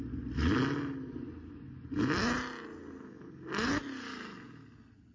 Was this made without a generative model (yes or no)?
yes